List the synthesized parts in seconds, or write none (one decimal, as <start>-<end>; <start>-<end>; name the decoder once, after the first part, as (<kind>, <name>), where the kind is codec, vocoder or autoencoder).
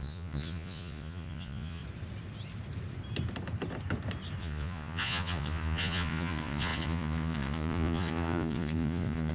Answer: 0.0-1.8 (vocoder, Vocos); 4.4-9.3